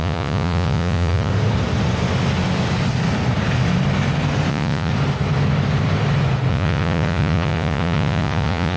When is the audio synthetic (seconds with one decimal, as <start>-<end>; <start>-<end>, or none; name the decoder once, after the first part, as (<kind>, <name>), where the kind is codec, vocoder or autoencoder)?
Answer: 0.0-1.3 (vocoder, Vocos); 4.5-4.9; 6.5-8.8